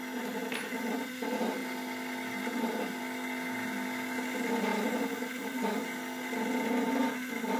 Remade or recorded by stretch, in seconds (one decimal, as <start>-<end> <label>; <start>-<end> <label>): 0.0-7.6 recorded